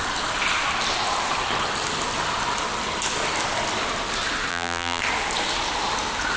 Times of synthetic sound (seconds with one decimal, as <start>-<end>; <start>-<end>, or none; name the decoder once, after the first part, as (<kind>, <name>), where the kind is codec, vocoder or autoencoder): 4.5-5.0 (vocoder, BigVGAN v2)